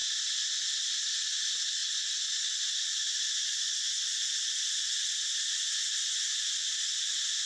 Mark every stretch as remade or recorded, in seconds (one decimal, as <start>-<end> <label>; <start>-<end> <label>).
0.0-7.5 recorded